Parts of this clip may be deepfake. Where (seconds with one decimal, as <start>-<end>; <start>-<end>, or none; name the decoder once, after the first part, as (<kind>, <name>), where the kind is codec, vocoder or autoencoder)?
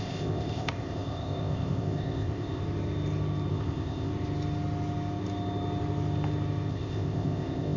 0.0-2.6 (codec, ZipCodec); 3.5-4.1; 6.7-7.8